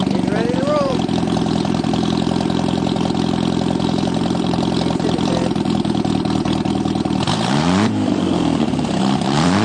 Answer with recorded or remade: remade